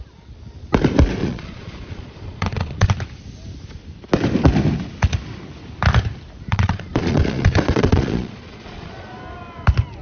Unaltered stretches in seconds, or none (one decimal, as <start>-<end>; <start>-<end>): 0.0-1.2; 2.9-6.5; 9.2-10.0